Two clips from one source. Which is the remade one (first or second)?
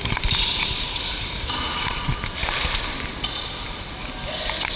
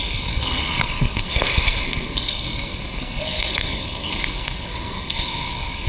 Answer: second